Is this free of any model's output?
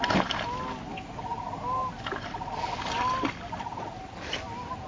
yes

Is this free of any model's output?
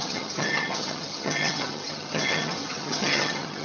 no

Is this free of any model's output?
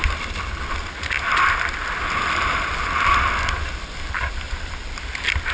yes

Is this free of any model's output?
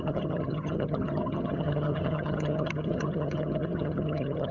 no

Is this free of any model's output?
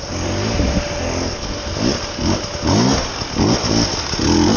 yes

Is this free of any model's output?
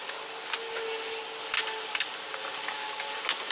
yes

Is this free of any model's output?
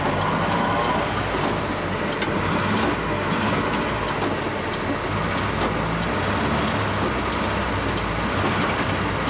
yes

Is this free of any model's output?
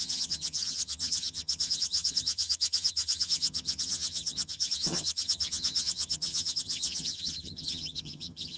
no